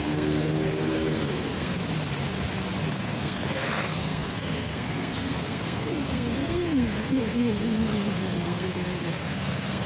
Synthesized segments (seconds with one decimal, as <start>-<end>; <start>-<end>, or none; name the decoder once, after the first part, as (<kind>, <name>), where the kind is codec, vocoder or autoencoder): 0.0-1.8 (codec, SNAC); 2.9-9.9